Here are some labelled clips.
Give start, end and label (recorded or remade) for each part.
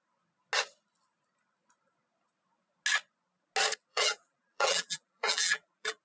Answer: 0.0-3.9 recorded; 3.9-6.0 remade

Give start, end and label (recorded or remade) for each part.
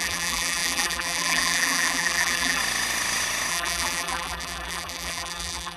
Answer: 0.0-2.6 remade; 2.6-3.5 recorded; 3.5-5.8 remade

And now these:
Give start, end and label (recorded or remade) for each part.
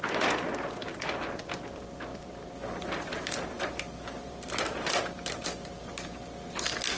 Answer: 0.0-0.9 recorded; 0.9-1.5 remade; 1.5-2.1 recorded; 2.1-5.9 remade; 5.9-7.0 recorded